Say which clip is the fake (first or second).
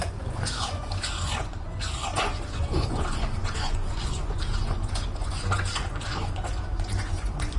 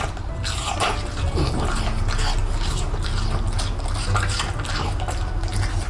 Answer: first